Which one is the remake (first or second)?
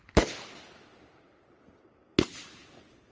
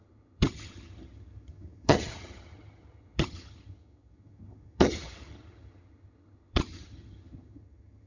second